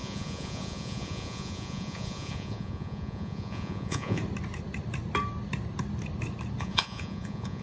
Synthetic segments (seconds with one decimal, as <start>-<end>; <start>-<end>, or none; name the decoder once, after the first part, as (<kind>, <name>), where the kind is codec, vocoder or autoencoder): 0.0-4.2 (vocoder, Vocos); 6.6-7.6